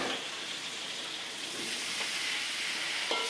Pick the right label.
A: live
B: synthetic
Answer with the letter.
A